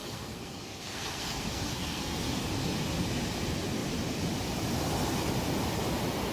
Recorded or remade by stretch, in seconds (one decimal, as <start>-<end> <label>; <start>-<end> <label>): 0.0-2.3 remade; 2.3-6.3 recorded